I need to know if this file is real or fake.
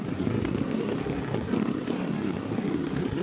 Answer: fake